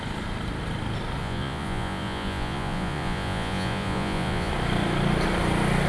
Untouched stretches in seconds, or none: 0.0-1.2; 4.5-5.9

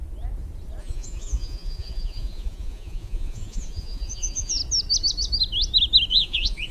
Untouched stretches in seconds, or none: 0.0-0.8; 4.6-6.1

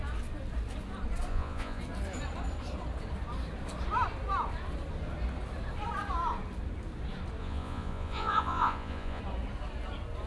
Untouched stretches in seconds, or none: 0.0-1.3; 1.8-7.4; 9.2-10.3

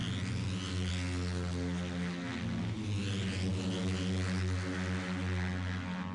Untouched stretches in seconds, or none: 0.0-6.1

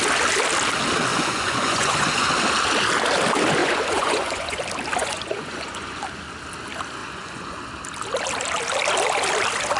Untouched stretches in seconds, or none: 0.0-1.1; 2.3-3.6; 4.6-5.0; 6.0-7.0; 7.6-9.8

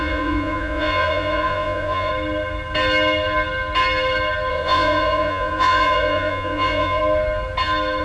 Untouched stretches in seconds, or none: 2.1-4.5; 7.0-8.0

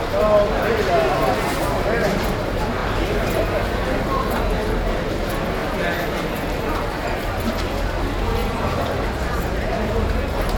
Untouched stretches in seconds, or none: 0.0-10.6